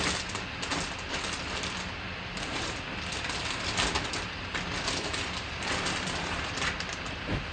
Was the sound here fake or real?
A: real